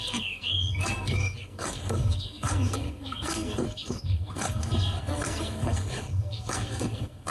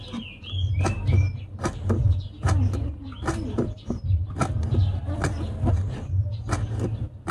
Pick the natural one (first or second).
second